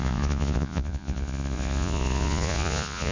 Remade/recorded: remade